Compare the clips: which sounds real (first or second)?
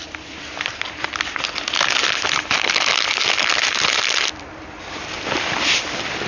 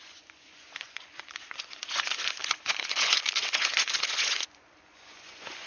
first